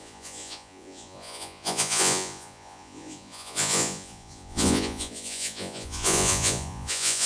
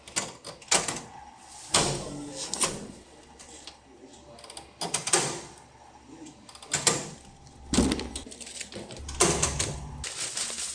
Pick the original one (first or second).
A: second